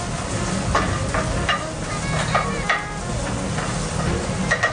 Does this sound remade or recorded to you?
recorded